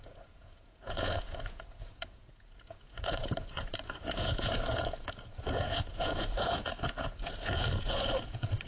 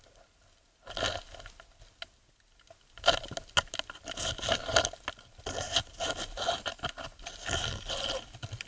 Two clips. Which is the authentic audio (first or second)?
second